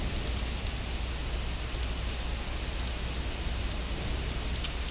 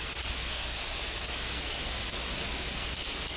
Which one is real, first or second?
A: first